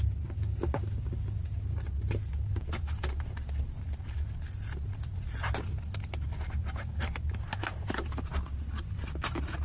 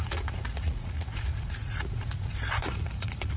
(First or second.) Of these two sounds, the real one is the first